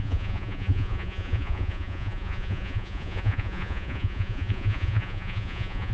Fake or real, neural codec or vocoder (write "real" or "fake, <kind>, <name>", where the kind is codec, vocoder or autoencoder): fake, vocoder, Vocos